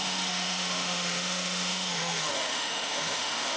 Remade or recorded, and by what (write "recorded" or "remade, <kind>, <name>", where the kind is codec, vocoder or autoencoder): remade, autoencoder, DAC-VAE